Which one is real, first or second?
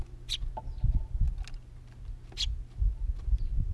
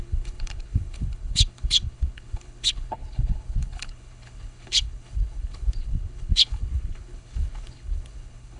first